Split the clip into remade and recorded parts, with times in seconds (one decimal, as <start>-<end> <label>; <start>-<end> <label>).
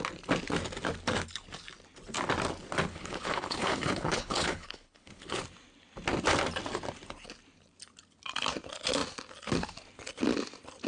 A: 0.0-2.9 recorded; 2.9-5.4 remade; 5.4-10.9 recorded